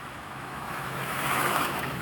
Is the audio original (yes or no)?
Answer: no